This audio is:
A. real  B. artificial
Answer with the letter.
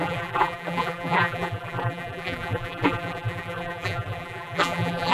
B